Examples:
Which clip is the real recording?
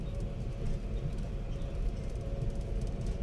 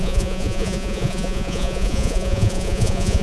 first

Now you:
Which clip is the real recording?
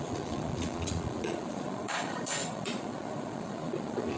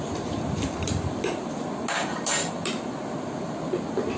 second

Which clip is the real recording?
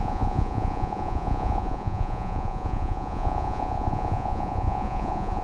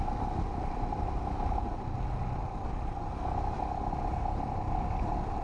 second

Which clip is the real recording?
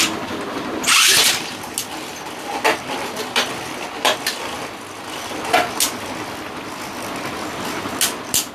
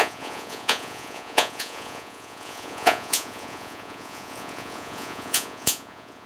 first